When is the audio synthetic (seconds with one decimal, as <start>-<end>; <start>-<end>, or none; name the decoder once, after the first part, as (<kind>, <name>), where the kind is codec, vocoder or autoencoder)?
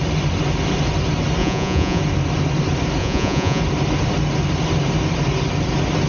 1.4-2.0 (vocoder, Vocos); 3.0-3.6